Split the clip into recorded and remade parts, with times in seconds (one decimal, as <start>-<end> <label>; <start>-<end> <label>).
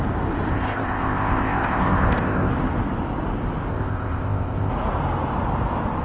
0.0-0.5 recorded; 0.5-2.5 remade; 2.5-3.7 recorded; 3.7-4.7 remade; 4.7-6.0 recorded